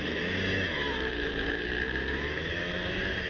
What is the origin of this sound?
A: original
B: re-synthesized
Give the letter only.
B